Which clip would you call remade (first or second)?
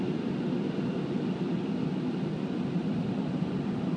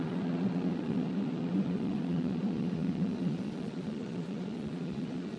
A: second